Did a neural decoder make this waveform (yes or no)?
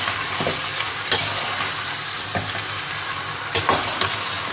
no